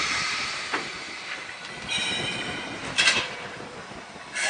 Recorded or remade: remade